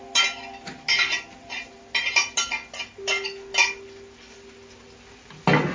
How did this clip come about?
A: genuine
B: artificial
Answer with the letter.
A